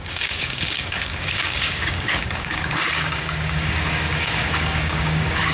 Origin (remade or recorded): remade